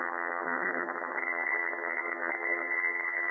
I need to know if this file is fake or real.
fake